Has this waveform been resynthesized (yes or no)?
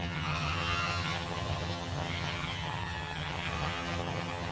yes